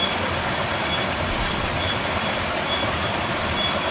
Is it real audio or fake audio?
real